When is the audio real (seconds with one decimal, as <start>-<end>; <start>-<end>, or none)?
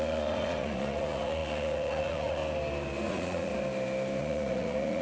2.4-3.1; 3.5-4.2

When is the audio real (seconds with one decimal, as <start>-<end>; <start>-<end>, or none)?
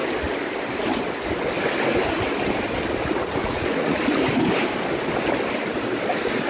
0.0-3.4; 4.0-6.5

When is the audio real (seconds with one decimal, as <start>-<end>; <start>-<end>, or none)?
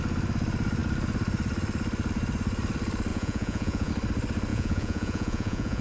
0.0-3.1; 3.9-4.5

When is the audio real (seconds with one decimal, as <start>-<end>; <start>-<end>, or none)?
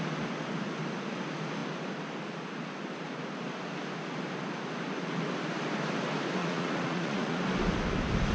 0.0-6.4; 7.4-8.3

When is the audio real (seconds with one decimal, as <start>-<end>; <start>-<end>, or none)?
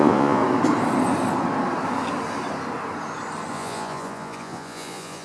0.4-3.5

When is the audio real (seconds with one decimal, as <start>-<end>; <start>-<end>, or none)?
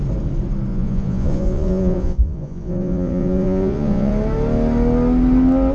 0.0-0.7; 4.1-5.7